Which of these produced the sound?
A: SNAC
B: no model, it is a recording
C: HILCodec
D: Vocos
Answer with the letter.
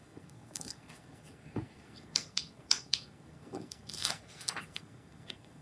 A